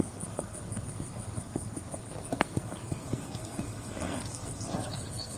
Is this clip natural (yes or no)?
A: no